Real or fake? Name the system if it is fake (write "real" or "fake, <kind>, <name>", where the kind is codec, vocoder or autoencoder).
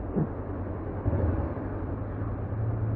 real